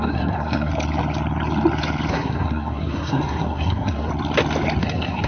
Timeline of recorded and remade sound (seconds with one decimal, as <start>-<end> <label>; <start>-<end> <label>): 0.0-0.7 remade; 0.7-2.1 recorded; 2.1-4.1 remade; 4.1-4.8 recorded; 4.8-5.3 remade